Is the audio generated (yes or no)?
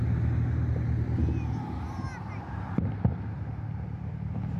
no